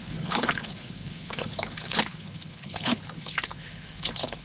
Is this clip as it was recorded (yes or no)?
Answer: no